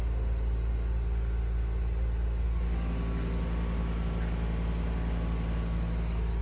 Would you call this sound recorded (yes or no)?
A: yes